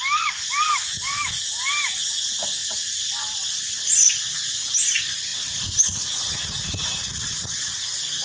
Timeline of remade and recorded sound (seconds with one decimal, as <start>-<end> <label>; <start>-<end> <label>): 0.0-8.2 recorded